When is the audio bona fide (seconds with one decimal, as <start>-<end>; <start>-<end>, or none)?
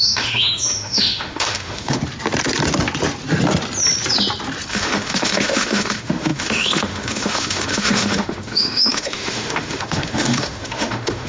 2.0-4.7